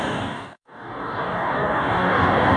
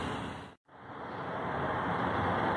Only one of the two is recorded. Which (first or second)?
second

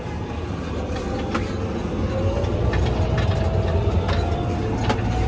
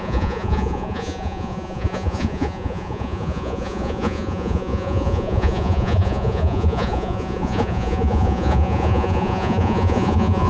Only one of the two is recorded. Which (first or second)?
first